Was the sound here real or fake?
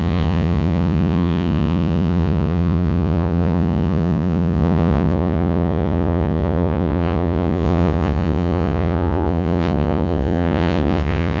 fake